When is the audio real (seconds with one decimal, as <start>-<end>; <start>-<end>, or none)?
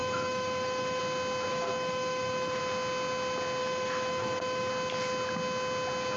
1.0-1.5; 2.6-3.6; 4.7-6.2